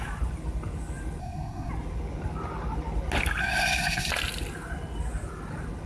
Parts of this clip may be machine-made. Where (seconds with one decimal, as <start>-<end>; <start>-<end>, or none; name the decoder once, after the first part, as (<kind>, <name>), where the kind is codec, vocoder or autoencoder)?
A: 1.2-1.7 (codec, SNAC); 3.4-4.1